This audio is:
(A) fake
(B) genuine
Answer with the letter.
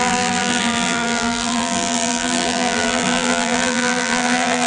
A